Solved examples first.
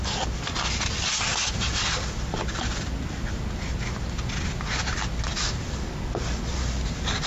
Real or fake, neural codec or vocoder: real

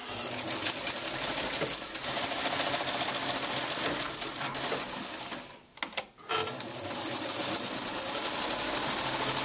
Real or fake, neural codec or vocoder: real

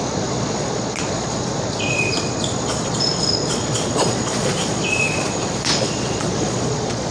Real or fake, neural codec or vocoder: fake, vocoder, Vocos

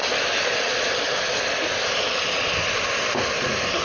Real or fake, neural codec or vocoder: real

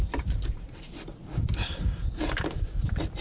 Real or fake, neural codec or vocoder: fake, vocoder, BigVGAN v2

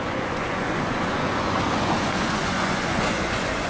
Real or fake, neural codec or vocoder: fake, vocoder, Vocos